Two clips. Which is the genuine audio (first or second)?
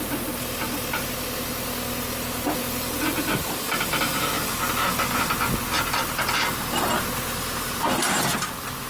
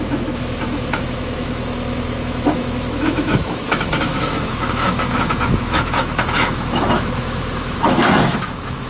first